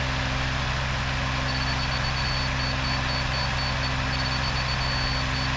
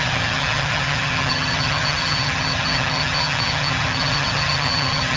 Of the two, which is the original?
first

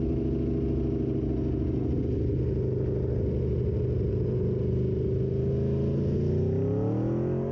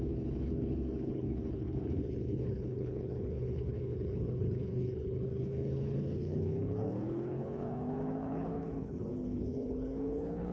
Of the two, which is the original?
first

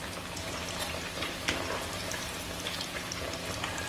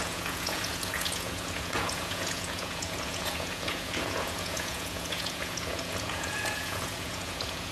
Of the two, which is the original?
first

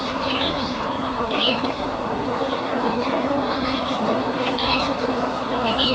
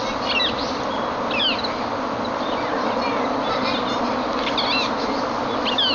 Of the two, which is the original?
second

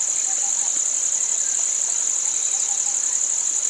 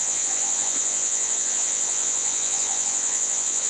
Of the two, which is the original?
first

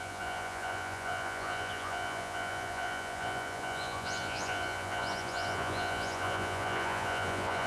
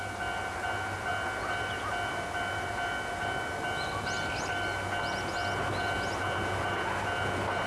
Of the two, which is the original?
second